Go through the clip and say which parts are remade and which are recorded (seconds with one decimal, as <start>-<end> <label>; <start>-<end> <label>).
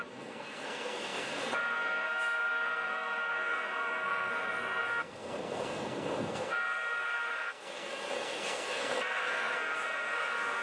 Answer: 0.0-10.6 remade